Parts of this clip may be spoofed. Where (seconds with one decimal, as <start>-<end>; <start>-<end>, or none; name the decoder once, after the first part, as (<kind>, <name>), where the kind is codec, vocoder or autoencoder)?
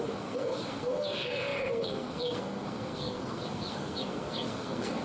0.0-5.0 (codec, SNAC)